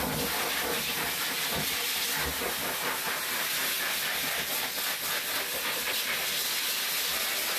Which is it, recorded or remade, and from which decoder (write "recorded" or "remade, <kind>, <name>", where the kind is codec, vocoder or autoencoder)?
recorded